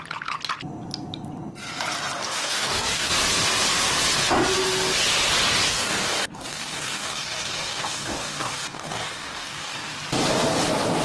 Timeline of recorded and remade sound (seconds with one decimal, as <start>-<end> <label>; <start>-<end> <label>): 0.0-2.2 recorded; 2.2-3.1 remade; 3.1-5.7 recorded; 5.7-9.9 remade; 9.9-11.0 recorded